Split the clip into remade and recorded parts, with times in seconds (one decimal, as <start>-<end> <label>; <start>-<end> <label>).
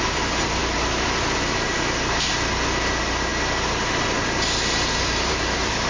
0.0-0.6 remade; 0.6-2.3 recorded; 2.3-5.9 remade